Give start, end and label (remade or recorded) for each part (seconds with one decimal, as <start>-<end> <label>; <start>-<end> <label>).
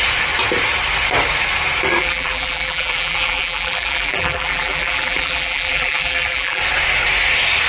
0.0-2.0 recorded; 2.0-6.6 remade; 6.6-7.7 recorded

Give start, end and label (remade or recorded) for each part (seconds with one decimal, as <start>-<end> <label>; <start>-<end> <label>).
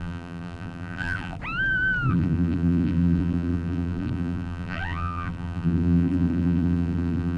0.0-1.4 remade; 1.4-2.1 recorded; 2.1-7.4 remade